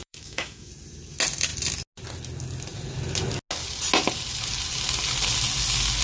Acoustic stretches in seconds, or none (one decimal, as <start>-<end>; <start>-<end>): 0.7-6.0